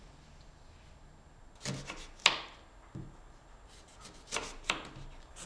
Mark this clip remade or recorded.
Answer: recorded